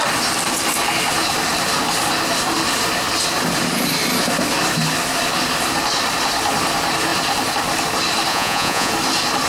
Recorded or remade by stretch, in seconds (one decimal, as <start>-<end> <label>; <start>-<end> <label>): 0.0-8.3 recorded; 8.3-8.9 remade; 8.9-9.5 recorded